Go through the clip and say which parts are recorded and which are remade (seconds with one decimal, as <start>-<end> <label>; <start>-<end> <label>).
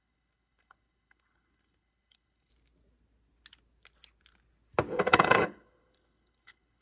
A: 0.0-2.5 remade; 2.5-5.0 recorded; 5.0-6.8 remade